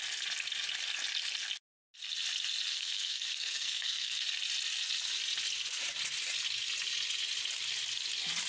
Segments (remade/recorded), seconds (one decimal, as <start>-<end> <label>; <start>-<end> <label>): 0.0-2.7 recorded; 2.7-4.2 remade; 4.2-8.5 recorded